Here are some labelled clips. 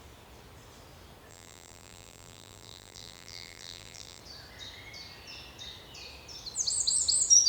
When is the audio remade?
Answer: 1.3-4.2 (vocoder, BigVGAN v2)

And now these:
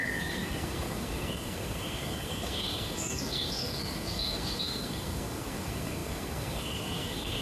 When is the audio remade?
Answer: 0.0-7.4 (codec, SNAC)